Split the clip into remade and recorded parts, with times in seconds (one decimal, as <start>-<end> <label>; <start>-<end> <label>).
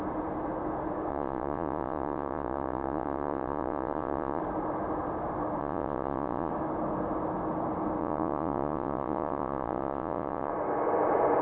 0.0-1.1 recorded; 1.1-4.4 remade; 4.4-5.6 recorded; 5.6-6.5 remade; 6.5-8.0 recorded; 8.0-10.5 remade; 10.5-11.4 recorded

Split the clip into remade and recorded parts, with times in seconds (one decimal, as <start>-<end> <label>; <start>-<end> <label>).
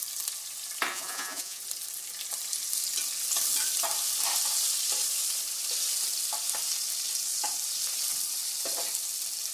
0.0-0.9 recorded; 0.9-1.6 remade; 1.6-9.5 recorded